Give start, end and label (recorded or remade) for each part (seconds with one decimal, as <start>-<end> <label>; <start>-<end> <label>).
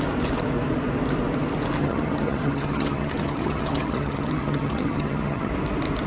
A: 0.0-1.8 recorded; 1.8-5.5 remade; 5.5-6.1 recorded